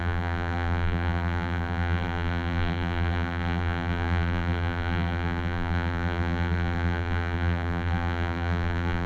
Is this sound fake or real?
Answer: fake